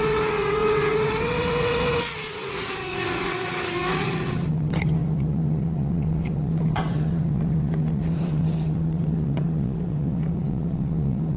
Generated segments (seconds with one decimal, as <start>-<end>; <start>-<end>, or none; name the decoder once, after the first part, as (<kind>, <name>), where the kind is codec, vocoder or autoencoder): 0.0-11.4 (vocoder, WaveNeXt)